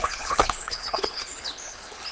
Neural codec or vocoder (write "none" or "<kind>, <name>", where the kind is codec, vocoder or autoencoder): codec, HILCodec